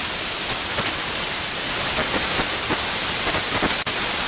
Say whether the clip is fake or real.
real